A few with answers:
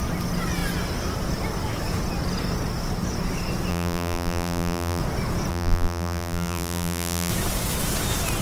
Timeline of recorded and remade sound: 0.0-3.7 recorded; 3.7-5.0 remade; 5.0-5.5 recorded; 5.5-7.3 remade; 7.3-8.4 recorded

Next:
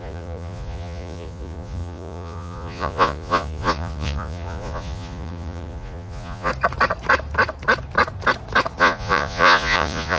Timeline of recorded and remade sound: 0.0-6.5 remade; 6.5-8.8 recorded; 8.8-10.2 remade

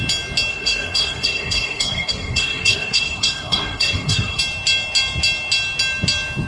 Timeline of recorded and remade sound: 0.0-0.5 recorded; 0.5-4.4 remade; 4.4-6.5 recorded

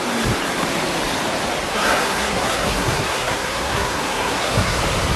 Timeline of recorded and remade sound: 0.0-1.7 recorded; 1.7-4.8 remade; 4.8-5.2 recorded

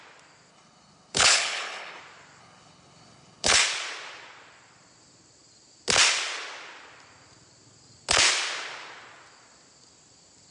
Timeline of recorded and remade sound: 0.0-0.5 recorded; 0.5-2.0 remade; 2.0-2.4 recorded; 2.4-3.6 remade; 3.6-10.5 recorded

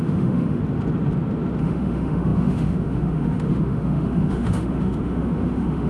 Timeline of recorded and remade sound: 0.0-0.6 remade; 0.6-1.6 recorded; 1.6-5.9 remade

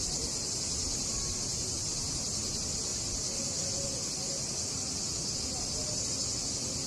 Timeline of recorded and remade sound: 0.0-0.4 recorded; 0.4-1.9 remade; 1.9-6.9 recorded